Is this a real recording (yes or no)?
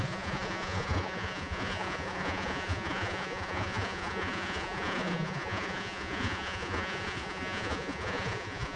no